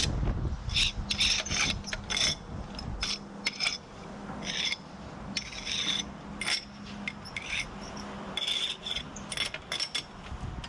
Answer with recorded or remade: recorded